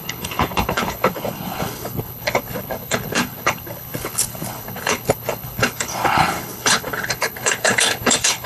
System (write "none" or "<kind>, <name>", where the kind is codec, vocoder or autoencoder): codec, HILCodec